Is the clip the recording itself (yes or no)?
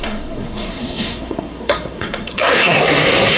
no